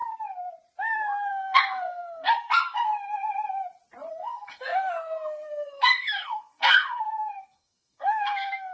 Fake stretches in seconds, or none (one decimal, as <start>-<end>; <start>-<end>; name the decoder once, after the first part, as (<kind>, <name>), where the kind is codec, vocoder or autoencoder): 1.3-2.9 (codec, SNAC); 4.1-8.7